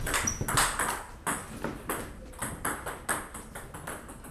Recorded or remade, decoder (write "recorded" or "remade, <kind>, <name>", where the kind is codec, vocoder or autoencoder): recorded